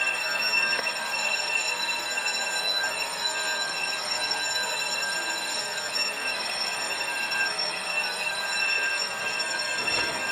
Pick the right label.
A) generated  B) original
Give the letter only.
A